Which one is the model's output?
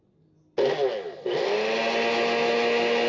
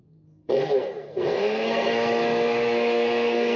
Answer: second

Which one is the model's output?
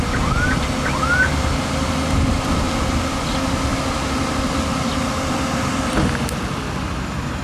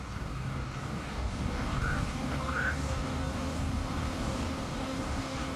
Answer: second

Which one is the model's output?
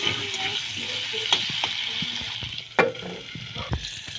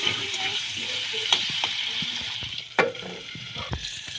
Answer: second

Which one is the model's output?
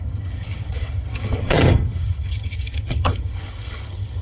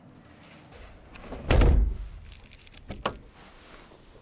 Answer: first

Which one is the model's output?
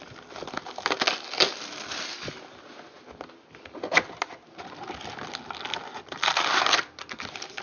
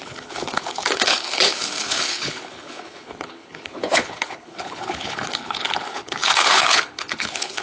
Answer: second